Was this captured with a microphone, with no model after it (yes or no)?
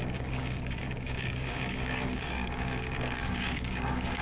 no